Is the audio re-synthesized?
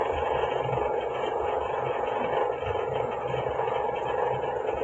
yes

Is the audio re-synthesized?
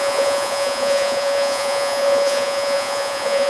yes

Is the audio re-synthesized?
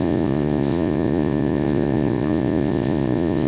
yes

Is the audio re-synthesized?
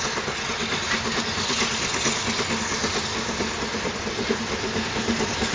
no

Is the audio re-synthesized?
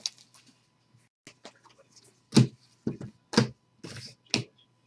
no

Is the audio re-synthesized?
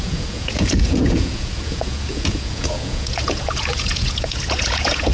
yes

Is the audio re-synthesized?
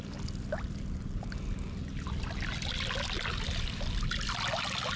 no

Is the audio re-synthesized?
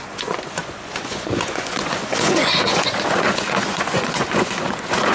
yes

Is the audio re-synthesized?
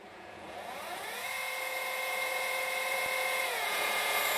yes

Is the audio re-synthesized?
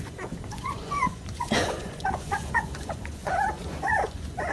yes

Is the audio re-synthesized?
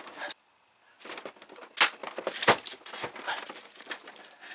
no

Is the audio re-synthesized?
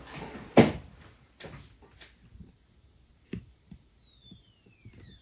no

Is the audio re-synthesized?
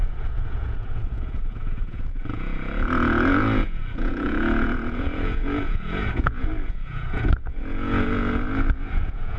yes